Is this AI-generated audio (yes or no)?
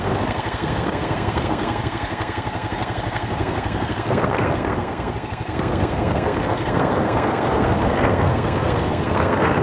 yes